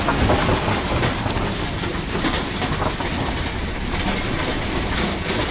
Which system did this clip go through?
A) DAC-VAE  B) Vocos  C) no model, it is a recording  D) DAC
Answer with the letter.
C